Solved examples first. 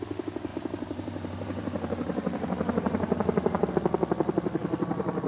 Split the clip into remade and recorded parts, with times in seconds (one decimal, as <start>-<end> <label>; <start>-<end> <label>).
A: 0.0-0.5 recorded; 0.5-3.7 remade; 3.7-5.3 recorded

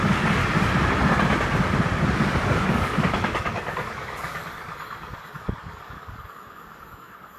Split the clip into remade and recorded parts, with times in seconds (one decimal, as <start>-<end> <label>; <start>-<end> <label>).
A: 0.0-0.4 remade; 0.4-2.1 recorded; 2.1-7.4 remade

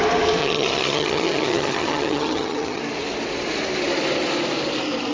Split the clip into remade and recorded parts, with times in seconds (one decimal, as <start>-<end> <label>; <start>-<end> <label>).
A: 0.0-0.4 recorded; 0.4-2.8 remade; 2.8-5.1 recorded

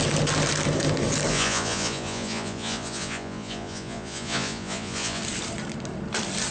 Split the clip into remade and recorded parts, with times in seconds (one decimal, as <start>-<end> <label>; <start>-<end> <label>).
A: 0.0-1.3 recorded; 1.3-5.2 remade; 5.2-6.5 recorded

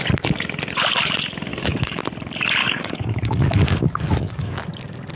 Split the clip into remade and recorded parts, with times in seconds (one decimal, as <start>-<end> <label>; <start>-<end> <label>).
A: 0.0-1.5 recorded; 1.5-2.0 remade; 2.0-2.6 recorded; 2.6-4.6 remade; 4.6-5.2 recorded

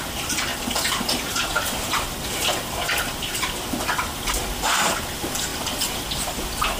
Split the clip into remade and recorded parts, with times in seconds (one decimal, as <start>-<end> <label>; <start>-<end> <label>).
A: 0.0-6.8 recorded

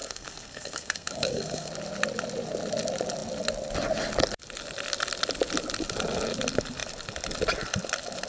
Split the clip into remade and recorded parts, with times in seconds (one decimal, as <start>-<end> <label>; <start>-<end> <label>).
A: 0.0-1.7 remade; 1.7-8.3 recorded